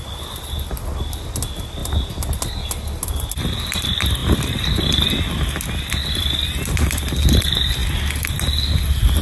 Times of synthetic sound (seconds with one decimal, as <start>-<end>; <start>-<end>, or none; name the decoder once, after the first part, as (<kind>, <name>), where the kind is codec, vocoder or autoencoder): none